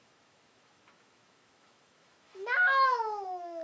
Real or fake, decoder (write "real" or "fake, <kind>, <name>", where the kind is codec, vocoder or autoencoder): fake, autoencoder, DAC-VAE